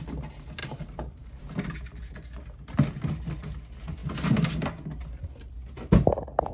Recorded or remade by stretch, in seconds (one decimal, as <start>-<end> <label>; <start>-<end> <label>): 0.0-0.6 recorded; 0.6-1.4 remade; 1.4-6.5 recorded